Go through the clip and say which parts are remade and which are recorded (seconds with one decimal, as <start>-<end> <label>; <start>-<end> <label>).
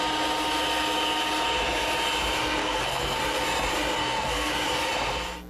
0.0-2.6 recorded; 2.6-3.2 remade; 3.2-4.0 recorded; 4.0-4.5 remade; 4.5-5.5 recorded